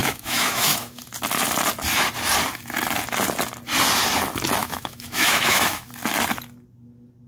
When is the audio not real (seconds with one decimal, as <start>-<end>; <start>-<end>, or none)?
0.0-1.0; 4.6-5.9